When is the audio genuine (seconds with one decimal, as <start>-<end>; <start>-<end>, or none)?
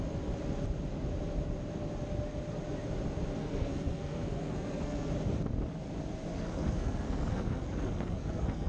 0.0-3.4; 5.1-6.3